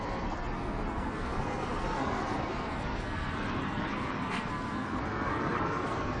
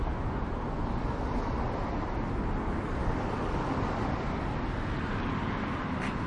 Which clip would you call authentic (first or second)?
second